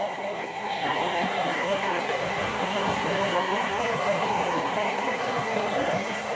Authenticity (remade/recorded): remade